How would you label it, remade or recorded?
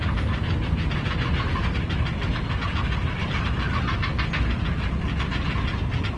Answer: recorded